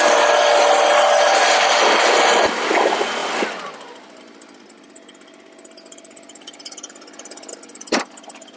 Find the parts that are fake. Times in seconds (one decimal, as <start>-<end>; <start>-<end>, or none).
3.2-4.2